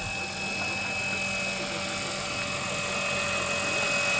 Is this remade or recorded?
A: recorded